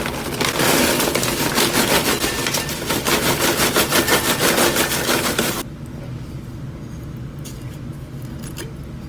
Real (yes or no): yes